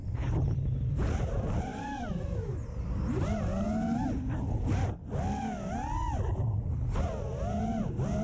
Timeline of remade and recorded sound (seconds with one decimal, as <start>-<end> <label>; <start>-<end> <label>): 0.0-8.2 recorded